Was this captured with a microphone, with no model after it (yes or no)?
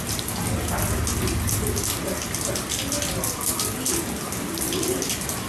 yes